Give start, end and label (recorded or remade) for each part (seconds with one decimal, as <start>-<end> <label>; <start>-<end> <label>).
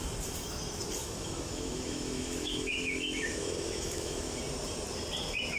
0.0-1.0 recorded; 1.0-4.4 remade; 4.4-5.6 recorded